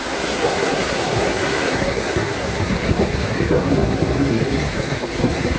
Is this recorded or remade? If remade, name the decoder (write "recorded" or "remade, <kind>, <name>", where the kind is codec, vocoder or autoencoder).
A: remade, codec, SNAC